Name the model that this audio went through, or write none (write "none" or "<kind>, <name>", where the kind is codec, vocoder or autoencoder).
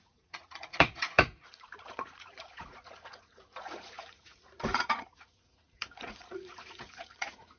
vocoder, Vocos